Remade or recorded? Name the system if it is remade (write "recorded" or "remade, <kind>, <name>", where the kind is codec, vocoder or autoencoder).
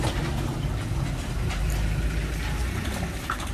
recorded